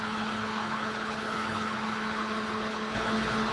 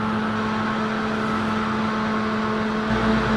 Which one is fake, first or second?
first